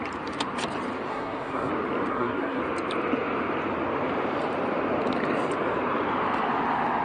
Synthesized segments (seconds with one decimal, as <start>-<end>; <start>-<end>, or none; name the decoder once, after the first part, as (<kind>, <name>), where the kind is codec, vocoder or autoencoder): 1.1-1.7 (codec, SNAC); 2.1-2.6